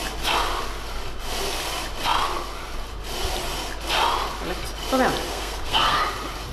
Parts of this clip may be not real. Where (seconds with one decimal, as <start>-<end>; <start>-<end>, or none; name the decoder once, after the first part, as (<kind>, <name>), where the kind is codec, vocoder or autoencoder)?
5.3-6.0 (codec, SNAC)